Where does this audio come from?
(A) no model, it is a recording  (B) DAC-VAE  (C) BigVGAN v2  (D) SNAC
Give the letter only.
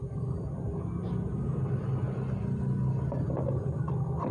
A